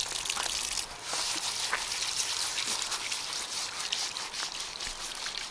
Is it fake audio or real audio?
real